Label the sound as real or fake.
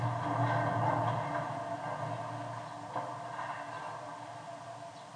real